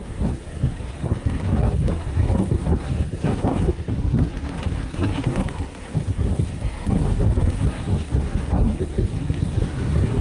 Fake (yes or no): yes